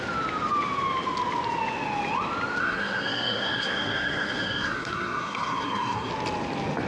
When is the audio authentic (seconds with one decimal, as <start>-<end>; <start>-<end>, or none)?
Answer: 0.0-2.6; 6.1-6.9

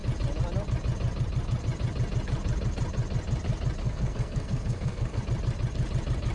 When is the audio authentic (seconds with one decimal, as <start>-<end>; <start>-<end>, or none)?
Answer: 0.0-3.8; 5.2-6.3

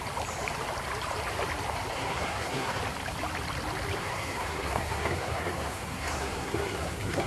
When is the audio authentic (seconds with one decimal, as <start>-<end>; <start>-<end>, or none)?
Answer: 0.0-1.9; 2.8-4.0

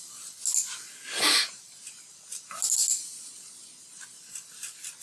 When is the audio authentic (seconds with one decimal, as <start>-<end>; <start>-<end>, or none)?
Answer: 0.0-5.0

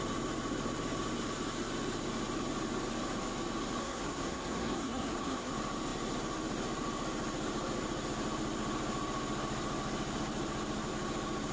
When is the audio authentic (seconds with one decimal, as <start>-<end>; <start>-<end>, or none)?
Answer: 0.0-3.8; 5.5-11.5

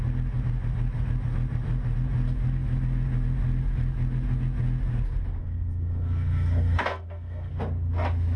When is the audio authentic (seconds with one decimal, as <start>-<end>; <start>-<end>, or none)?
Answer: 0.0-5.4; 7.5-8.4

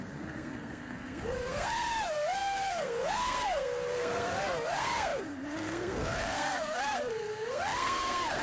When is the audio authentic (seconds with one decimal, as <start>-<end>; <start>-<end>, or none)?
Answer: none

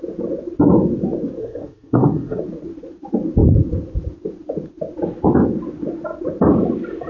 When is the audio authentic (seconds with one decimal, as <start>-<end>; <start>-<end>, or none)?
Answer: 0.0-1.4; 2.4-7.1